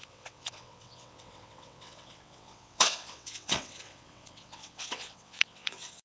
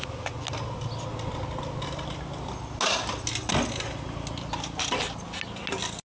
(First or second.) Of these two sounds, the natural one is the second